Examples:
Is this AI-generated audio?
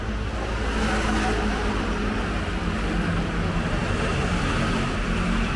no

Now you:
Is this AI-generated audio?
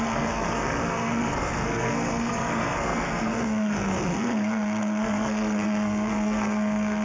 yes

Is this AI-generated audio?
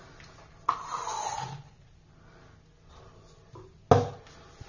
no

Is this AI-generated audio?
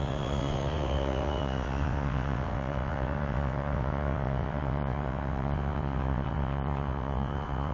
yes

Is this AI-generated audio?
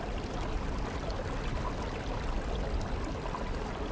no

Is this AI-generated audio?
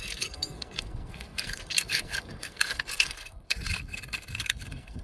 yes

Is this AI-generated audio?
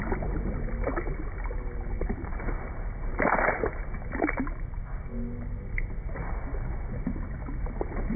no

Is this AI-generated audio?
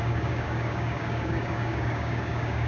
yes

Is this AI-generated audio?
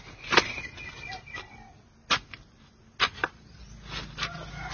no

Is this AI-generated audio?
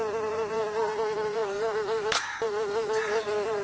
yes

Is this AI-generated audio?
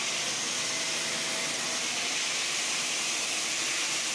no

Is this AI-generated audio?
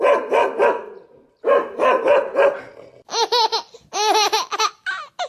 no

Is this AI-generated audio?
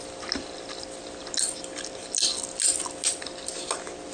no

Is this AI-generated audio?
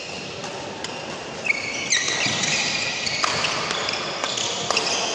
no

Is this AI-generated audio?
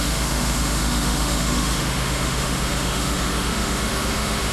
yes